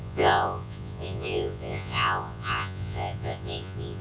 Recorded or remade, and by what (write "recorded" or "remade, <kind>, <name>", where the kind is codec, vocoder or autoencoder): remade, vocoder, Vocos